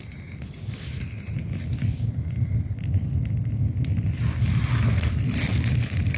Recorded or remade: recorded